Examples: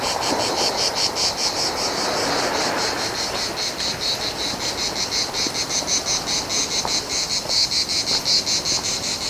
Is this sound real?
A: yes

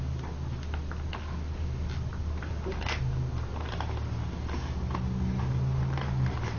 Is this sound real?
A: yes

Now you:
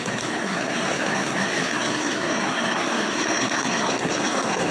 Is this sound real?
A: no